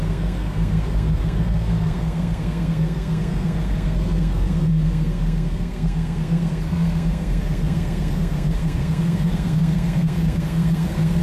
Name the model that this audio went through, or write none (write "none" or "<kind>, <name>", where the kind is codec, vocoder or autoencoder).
codec, SNAC